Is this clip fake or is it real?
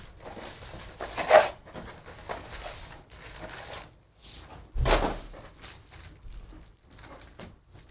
real